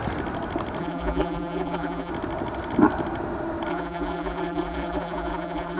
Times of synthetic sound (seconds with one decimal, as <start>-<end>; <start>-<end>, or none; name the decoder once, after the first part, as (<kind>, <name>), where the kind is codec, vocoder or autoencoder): 0.8-2.1 (vocoder, BigVGAN v2); 3.7-5.8